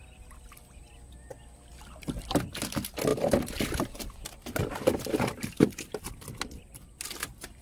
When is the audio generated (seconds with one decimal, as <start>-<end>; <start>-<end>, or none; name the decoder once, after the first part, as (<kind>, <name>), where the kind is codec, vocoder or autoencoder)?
1.7-2.3 (vocoder, BigVGAN v2); 3.1-7.0